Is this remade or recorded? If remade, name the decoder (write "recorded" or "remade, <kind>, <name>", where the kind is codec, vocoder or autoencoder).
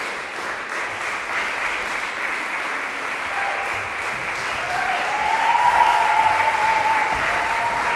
recorded